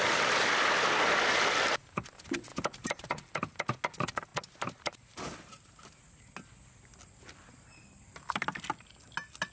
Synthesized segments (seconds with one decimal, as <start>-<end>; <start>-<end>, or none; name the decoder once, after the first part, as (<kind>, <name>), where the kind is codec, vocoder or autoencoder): 2.5-3.1 (vocoder, BigVGAN v2); 4.3-6.2